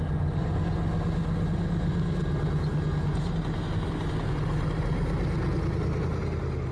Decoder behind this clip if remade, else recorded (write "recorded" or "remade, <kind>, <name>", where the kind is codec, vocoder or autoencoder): recorded